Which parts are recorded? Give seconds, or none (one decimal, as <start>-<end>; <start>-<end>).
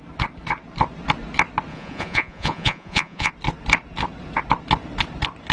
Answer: 0.0-1.7; 3.3-5.5